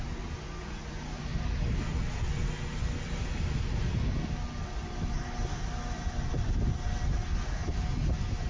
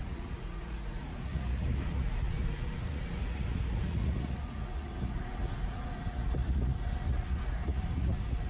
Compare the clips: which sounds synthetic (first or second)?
second